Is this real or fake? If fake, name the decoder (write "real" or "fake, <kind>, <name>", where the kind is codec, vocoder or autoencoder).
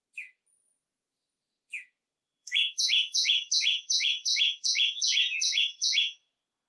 fake, vocoder, Vocos